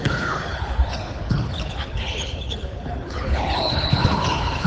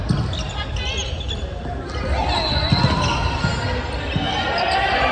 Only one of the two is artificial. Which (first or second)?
first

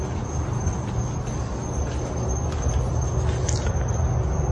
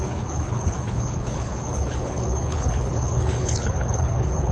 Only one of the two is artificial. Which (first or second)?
second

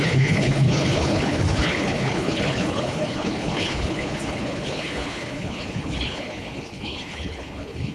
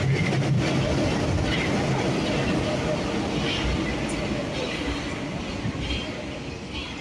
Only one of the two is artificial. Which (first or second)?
first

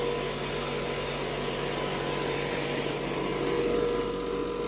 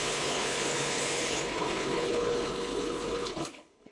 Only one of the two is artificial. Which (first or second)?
second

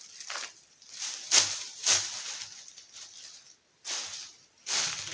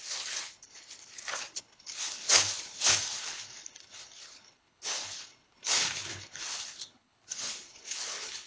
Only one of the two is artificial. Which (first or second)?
second